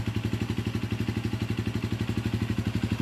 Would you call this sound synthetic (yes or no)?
no